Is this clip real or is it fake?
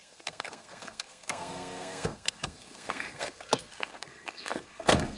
fake